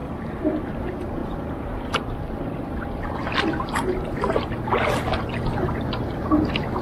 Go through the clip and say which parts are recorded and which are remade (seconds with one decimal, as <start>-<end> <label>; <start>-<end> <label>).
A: 0.0-6.8 recorded